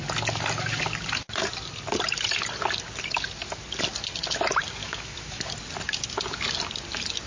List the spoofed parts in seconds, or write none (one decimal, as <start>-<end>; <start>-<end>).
4.8-5.5